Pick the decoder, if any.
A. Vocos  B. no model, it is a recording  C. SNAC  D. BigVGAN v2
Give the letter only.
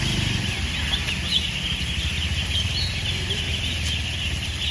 B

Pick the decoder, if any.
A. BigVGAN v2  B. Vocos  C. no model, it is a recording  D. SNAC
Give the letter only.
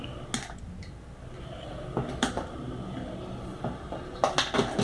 C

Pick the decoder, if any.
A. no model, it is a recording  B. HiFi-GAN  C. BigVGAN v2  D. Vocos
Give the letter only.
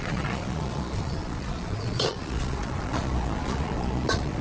D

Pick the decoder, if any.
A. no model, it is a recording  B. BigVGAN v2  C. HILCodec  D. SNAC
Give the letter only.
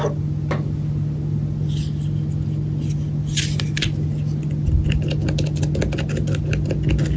A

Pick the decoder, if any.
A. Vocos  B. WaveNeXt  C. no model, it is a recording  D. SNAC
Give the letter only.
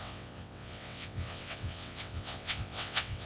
B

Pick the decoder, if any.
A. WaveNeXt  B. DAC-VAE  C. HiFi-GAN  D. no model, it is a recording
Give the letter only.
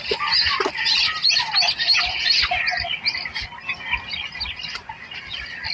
D